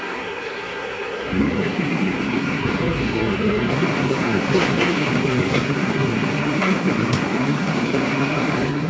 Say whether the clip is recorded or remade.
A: remade